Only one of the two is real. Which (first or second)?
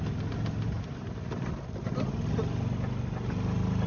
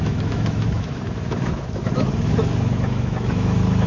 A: first